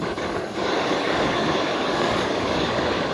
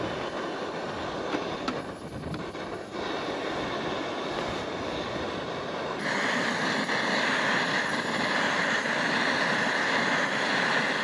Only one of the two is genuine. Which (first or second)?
second